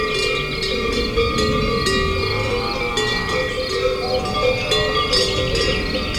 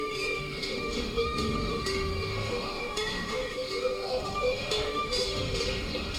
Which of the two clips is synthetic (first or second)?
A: second